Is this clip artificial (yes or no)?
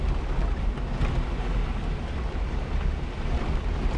no